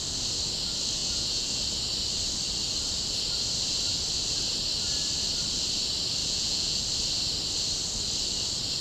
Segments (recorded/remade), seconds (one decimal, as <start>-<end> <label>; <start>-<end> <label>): 0.0-1.0 recorded; 1.0-1.6 remade; 1.6-6.2 recorded; 6.2-6.8 remade; 6.8-8.8 recorded